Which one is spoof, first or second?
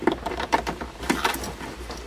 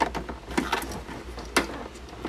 first